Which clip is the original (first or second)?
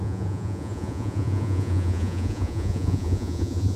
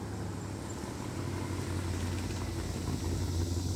second